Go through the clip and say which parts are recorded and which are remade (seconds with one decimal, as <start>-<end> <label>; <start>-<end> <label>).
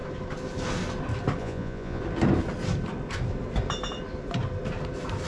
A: 0.0-1.4 recorded; 1.4-2.0 remade; 2.0-5.3 recorded